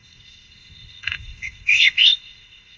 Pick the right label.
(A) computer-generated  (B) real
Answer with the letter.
A